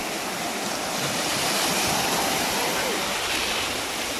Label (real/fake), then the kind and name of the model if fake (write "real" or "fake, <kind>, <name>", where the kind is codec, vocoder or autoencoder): fake, vocoder, BigVGAN v2